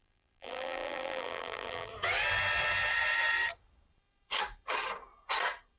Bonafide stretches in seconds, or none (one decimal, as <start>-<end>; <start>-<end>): 1.9-5.8